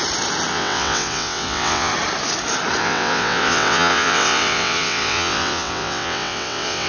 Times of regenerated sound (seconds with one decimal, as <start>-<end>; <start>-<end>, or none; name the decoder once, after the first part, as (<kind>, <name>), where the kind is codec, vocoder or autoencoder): 0.5-1.9 (vocoder, WaveNeXt); 2.8-6.9